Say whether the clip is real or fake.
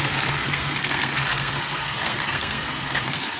fake